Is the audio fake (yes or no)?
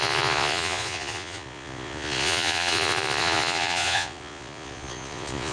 yes